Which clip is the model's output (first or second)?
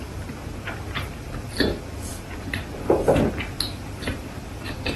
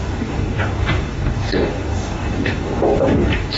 second